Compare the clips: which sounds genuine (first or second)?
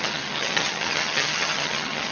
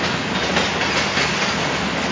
second